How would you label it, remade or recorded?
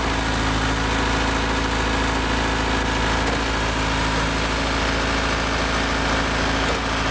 recorded